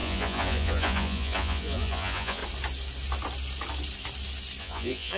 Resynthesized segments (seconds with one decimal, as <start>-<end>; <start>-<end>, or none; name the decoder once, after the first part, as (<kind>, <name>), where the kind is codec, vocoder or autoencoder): 0.0-2.4 (vocoder, Vocos); 4.6-5.2